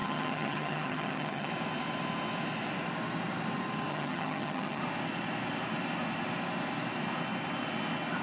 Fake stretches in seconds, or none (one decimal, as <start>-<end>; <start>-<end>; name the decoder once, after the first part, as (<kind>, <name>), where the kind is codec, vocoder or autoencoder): 0.0-1.5 (vocoder, HiFi-GAN); 3.9-4.8

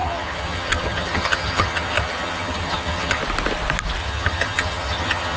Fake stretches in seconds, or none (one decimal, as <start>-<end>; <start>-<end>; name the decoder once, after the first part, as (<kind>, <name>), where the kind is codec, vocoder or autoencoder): 0.0-3.2 (vocoder, HiFi-GAN); 4.0-5.4

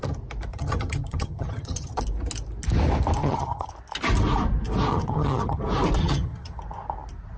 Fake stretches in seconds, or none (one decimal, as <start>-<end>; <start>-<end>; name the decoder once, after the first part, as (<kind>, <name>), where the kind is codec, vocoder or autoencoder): 0.5-2.0 (vocoder, HiFi-GAN); 3.2-3.7; 4.9-5.6; 6.0-6.6